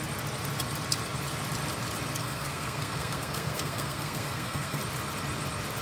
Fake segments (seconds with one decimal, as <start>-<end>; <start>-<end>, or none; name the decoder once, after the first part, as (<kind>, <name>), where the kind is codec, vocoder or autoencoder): 2.2-4.8 (codec, SNAC)